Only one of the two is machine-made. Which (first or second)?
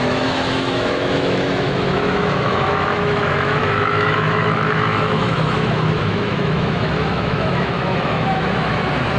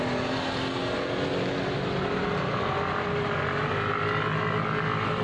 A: first